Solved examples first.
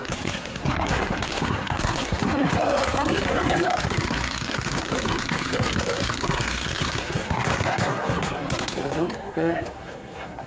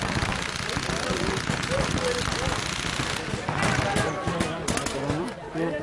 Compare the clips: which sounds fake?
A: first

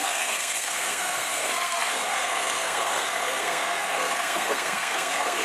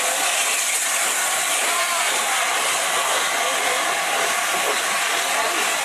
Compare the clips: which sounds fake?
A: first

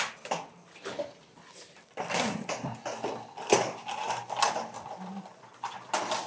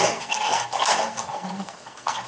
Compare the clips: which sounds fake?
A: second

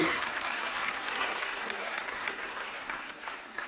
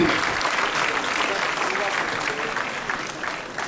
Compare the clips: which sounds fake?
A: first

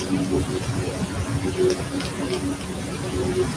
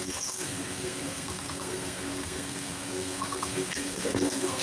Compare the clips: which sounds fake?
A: second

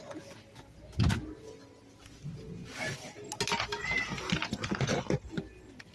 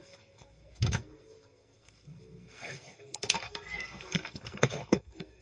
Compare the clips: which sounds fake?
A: second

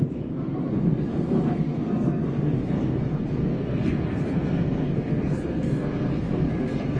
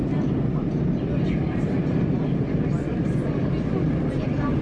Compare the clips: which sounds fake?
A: first